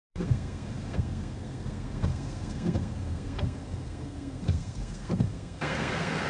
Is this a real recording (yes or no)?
no